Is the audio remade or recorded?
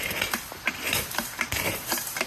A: remade